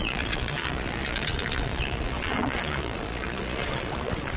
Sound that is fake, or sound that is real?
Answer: fake